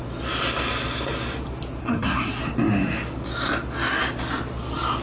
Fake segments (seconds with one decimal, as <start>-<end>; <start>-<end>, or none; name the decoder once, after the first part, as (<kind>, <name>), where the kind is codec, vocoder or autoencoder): 1.8-2.4 (codec, SNAC)